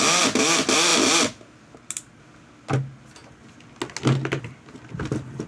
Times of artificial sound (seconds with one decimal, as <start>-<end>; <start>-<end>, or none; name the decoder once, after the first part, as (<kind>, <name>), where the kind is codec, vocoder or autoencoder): none